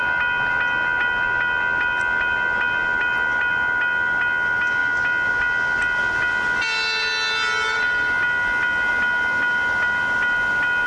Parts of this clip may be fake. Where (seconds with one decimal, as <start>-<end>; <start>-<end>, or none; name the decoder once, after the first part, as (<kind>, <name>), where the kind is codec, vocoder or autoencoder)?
none